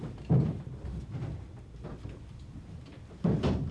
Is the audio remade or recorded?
recorded